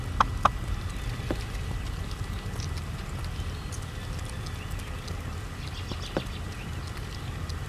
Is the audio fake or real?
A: real